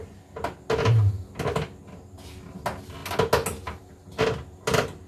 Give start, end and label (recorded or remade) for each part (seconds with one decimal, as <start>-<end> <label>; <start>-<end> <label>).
0.0-5.1 recorded